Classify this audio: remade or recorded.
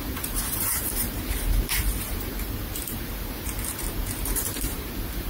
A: remade